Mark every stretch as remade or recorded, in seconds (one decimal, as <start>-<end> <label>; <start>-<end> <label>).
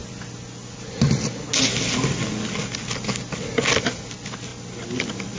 0.0-5.4 recorded